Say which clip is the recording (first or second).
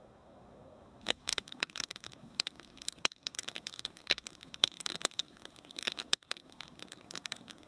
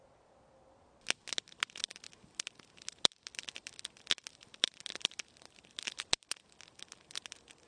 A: second